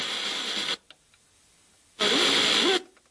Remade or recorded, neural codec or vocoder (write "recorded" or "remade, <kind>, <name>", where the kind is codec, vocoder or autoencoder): recorded